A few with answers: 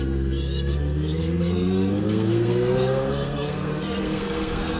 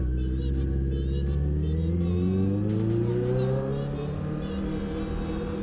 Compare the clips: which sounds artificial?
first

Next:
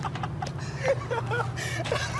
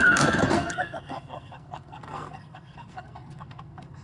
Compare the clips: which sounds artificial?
second